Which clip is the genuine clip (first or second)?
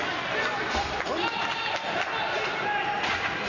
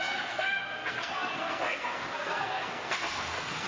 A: first